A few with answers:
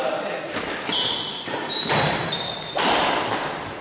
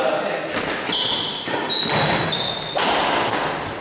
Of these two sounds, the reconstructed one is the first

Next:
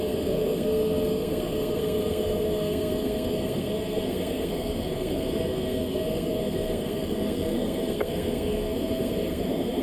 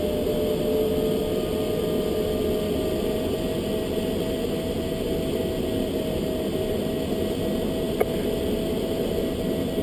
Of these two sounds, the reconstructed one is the first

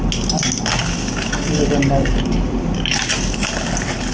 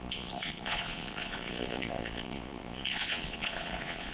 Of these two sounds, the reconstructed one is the second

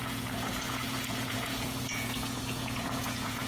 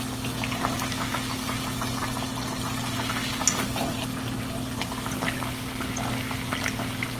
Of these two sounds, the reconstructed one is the first